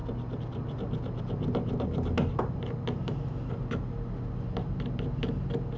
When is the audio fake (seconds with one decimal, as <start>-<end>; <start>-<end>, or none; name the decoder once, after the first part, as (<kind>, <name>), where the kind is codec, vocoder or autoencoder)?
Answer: none